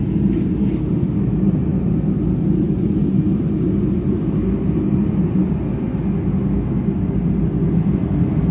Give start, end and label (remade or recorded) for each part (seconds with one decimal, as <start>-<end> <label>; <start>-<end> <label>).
0.0-8.5 recorded